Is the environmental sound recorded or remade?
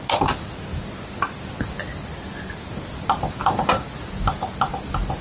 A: recorded